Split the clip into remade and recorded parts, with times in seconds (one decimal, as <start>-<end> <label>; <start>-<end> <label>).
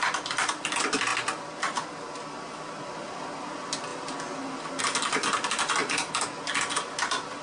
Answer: 0.0-7.4 recorded